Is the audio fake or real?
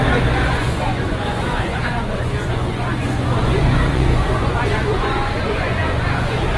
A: fake